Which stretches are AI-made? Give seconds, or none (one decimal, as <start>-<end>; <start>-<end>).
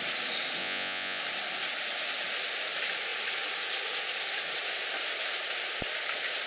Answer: 0.6-1.2